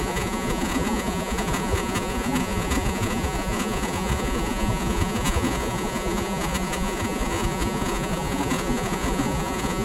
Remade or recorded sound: remade